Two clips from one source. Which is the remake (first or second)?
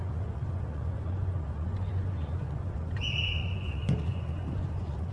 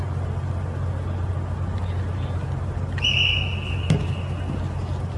first